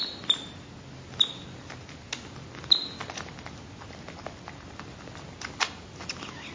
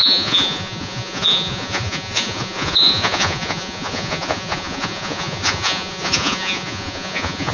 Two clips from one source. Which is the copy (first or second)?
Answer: second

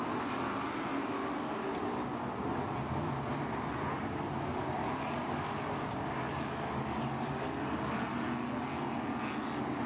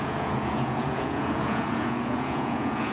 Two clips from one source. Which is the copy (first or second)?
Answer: second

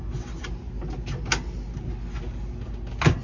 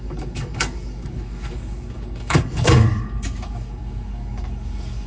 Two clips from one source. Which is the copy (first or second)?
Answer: second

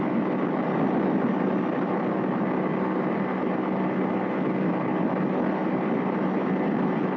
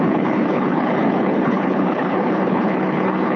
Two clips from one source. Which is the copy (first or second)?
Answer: second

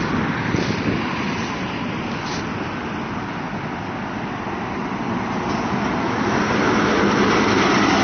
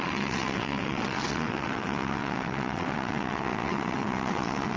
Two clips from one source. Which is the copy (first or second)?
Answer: second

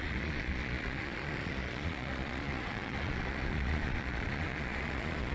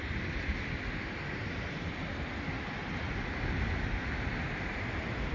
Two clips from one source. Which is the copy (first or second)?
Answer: first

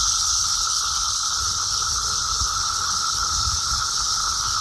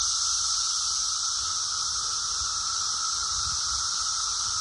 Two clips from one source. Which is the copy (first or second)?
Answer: first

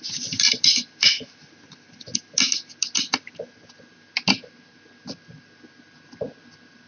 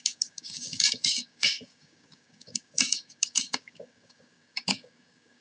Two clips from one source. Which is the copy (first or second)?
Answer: second